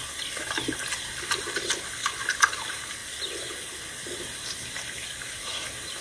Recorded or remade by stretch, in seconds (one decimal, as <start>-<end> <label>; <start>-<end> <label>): 0.0-6.0 recorded